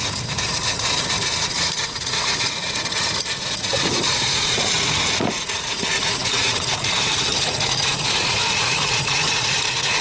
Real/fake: fake